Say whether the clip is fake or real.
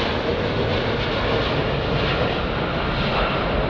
real